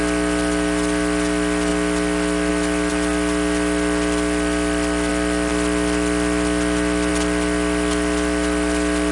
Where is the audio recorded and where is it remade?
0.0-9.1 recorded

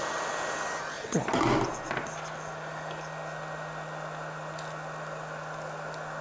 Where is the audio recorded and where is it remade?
0.0-6.2 recorded

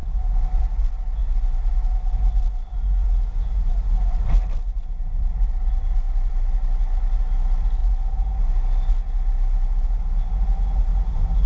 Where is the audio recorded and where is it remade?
0.0-11.5 recorded